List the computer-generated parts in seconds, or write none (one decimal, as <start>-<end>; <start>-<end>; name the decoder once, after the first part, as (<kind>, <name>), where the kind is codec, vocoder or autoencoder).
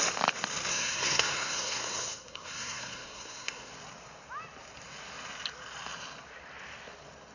0.7-3.7 (codec, SNAC)